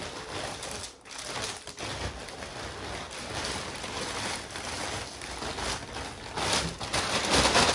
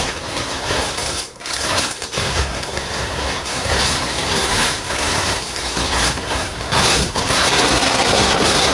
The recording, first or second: first